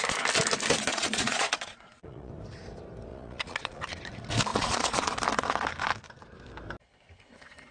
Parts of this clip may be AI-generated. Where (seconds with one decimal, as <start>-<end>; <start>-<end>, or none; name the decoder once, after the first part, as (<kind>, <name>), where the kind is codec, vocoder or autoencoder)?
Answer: 0.9-2.3 (vocoder, Vocos); 3.1-3.8; 4.5-5.1